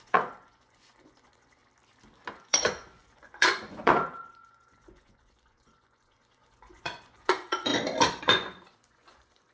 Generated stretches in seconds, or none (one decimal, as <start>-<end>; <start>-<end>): 0.0-1.6; 2.3-7.7; 8.2-9.5